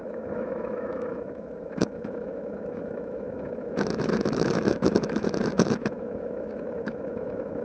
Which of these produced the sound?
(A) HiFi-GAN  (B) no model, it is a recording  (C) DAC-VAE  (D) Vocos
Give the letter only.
C